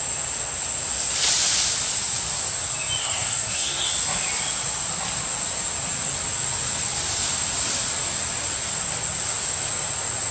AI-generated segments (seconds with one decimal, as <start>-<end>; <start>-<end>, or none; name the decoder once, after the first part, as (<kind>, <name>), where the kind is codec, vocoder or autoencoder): 3.0-3.9 (codec, SNAC)